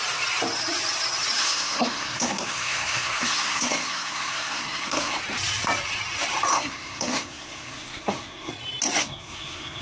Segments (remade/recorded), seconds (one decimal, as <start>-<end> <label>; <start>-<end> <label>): 0.0-1.4 recorded; 1.4-5.2 remade; 5.2-6.5 recorded; 6.5-8.5 remade; 8.5-9.0 recorded; 9.0-9.8 remade